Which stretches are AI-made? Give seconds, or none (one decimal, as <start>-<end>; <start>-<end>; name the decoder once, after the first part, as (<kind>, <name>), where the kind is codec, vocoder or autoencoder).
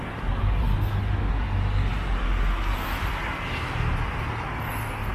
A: none